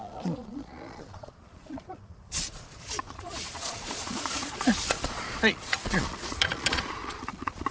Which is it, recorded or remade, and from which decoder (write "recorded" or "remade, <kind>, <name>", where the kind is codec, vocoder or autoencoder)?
remade, vocoder, Vocos